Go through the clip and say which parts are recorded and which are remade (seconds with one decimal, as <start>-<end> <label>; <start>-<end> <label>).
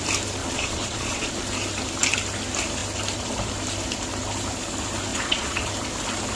0.0-0.4 recorded; 0.4-1.3 remade; 1.3-5.1 recorded; 5.1-5.7 remade; 5.7-6.4 recorded